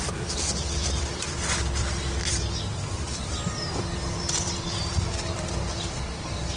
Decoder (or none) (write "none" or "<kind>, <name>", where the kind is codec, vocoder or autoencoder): vocoder, BigVGAN v2